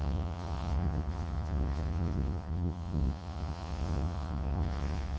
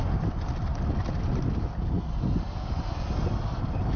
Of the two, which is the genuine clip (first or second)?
second